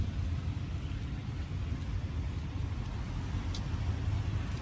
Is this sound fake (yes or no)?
no